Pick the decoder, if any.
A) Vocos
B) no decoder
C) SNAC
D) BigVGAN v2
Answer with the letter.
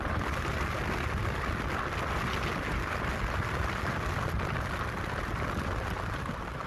B